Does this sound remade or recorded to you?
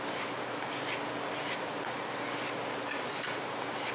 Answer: recorded